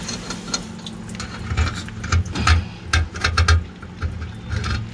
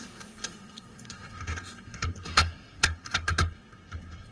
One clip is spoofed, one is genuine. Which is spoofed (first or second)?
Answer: second